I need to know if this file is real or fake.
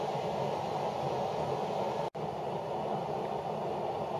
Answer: real